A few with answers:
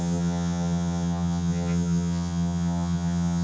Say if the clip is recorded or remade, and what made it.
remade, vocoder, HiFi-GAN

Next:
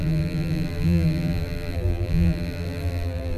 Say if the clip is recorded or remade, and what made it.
remade, vocoder, BigVGAN v2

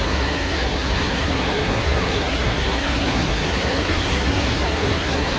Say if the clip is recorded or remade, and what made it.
remade, codec, SNAC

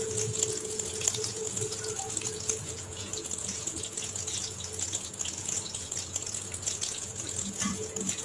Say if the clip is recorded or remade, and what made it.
remade, vocoder, Vocos